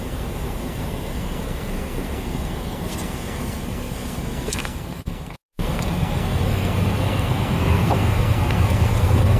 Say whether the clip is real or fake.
fake